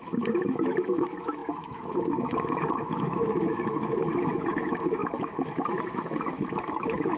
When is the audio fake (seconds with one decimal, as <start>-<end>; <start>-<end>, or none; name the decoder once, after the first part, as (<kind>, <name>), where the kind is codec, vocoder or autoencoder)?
0.0-7.2 (autoencoder, DAC-VAE)